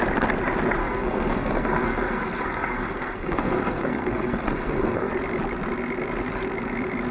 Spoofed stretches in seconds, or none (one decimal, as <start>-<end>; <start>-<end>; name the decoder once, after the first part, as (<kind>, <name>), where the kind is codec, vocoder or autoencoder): 0.8-5.1 (codec, SNAC)